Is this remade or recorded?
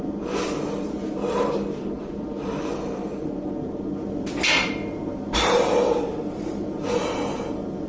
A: recorded